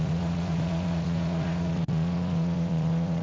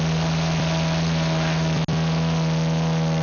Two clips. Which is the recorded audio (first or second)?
second